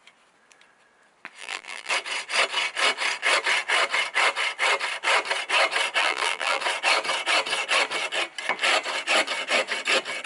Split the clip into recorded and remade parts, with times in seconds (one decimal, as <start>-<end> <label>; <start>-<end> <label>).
0.0-1.4 recorded; 1.4-1.9 remade; 1.9-6.0 recorded; 6.0-6.6 remade; 6.6-10.3 recorded